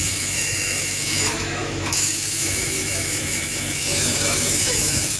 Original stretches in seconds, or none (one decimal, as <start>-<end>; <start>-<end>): none